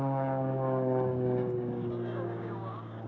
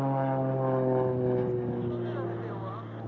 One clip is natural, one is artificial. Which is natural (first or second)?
second